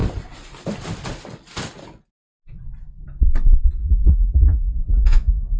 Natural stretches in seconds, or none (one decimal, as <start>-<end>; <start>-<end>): 0.0-3.8